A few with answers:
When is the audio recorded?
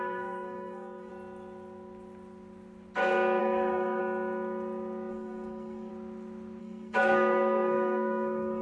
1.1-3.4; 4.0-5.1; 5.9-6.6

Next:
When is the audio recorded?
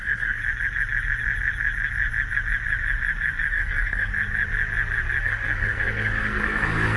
0.4-3.5; 4.1-5.2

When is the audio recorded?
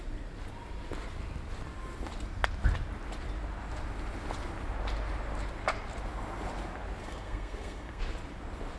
0.0-7.0; 8.0-8.8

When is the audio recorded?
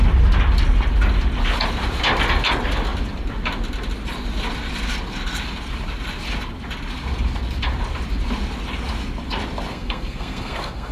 0.0-9.7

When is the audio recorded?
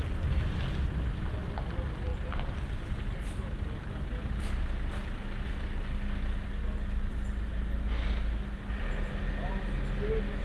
0.0-10.4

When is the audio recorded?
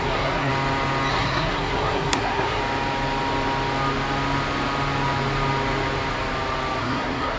0.5-1.1; 2.6-6.8